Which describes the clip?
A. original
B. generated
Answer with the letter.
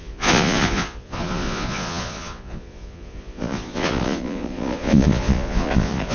B